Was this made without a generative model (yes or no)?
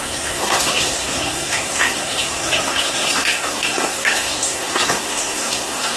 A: no